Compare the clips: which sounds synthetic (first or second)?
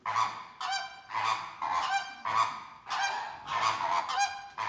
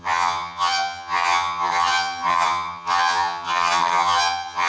second